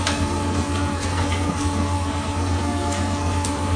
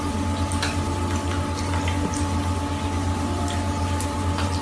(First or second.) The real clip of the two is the second